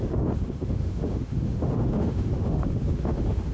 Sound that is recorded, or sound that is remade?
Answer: remade